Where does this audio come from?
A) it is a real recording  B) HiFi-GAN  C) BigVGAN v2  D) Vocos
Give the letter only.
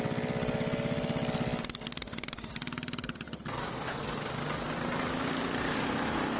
A